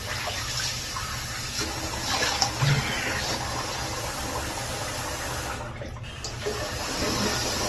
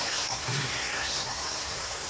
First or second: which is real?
first